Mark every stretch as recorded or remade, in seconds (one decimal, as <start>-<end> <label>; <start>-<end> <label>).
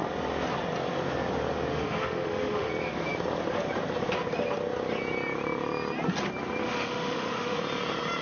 0.0-1.7 recorded; 1.7-2.7 remade; 2.7-6.6 recorded; 6.6-7.6 remade; 7.6-8.2 recorded